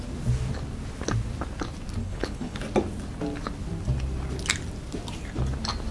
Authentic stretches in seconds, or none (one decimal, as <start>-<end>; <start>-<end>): 0.0-2.0; 2.6-5.9